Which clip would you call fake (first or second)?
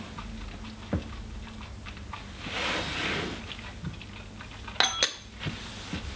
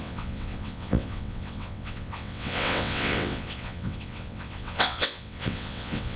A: second